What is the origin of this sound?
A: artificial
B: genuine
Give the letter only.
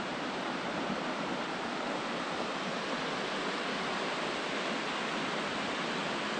B